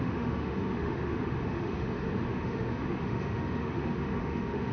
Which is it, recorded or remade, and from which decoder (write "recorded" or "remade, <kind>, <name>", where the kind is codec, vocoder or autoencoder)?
remade, autoencoder, DAC-VAE